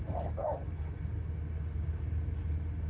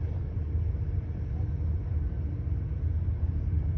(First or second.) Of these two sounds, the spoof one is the second